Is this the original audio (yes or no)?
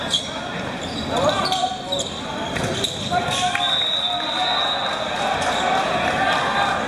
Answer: no